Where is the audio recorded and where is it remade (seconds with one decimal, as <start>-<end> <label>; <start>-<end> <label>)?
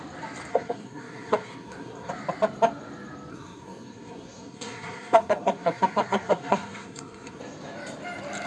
0.0-0.5 recorded; 0.5-2.1 remade; 2.1-3.3 recorded; 3.3-7.4 remade; 7.4-8.5 recorded